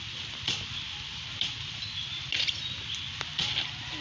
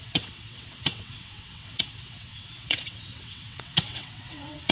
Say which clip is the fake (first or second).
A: second